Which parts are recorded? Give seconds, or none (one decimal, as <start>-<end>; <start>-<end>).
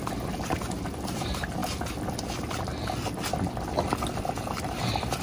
0.0-0.9; 1.6-2.3; 2.7-4.2